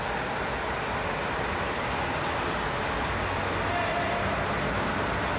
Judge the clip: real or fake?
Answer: real